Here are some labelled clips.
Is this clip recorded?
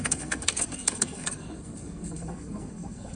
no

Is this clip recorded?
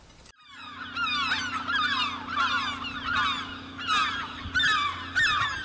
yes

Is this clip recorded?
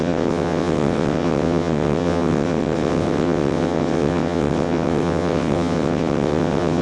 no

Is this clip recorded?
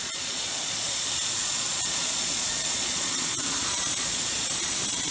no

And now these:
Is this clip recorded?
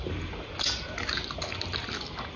yes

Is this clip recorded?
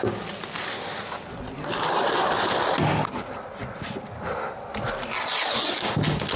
yes